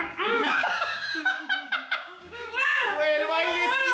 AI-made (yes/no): yes